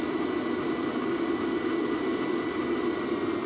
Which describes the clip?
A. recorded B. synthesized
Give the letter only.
A